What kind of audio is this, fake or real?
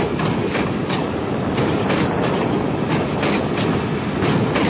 real